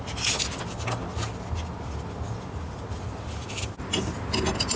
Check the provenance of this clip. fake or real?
real